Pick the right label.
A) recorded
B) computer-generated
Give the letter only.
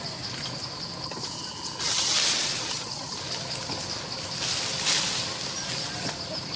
A